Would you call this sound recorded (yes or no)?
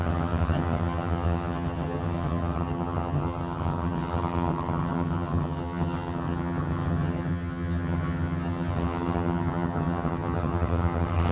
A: no